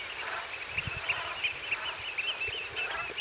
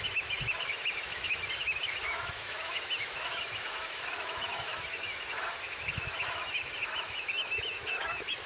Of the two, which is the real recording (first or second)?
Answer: first